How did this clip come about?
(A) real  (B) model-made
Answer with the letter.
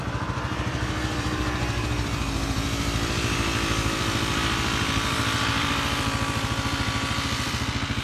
B